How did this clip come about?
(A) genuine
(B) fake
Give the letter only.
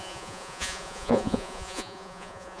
B